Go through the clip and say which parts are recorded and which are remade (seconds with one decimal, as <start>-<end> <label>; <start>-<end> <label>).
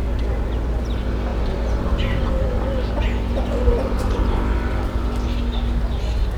0.0-6.4 recorded